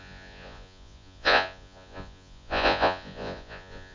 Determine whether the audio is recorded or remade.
remade